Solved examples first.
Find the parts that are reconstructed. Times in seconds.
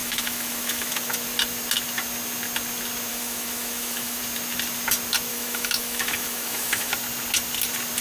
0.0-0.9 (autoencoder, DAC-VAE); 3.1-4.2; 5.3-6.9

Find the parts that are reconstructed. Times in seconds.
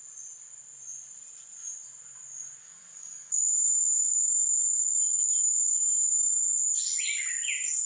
2.6-6.4 (codec, DAC)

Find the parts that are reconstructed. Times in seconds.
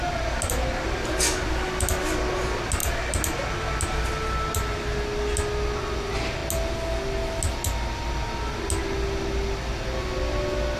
none